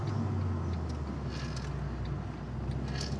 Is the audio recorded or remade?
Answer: recorded